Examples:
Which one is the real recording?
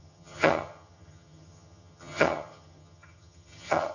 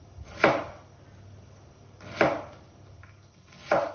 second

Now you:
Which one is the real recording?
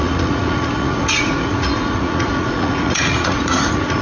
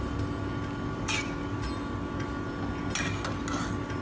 second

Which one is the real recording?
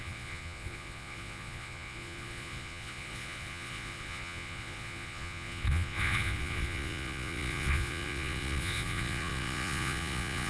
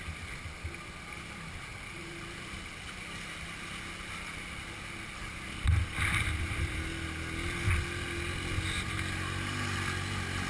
second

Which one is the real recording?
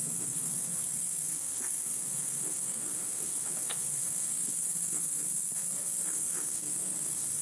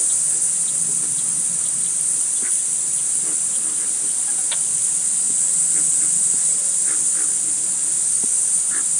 second